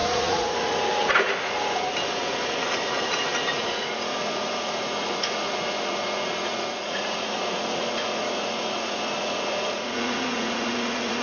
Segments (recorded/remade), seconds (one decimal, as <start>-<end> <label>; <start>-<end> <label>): 0.0-11.2 remade